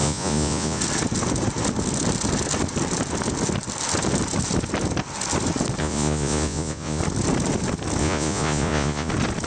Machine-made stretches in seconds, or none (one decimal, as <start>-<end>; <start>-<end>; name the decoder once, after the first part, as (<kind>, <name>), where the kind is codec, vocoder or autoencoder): 0.0-0.8 (vocoder, Vocos); 5.8-7.0; 8.0-9.1